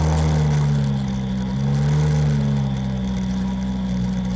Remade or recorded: recorded